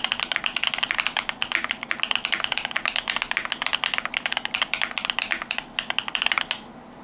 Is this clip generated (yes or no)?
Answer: no